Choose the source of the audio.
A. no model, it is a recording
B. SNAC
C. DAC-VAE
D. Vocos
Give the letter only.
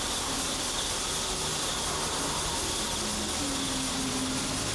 A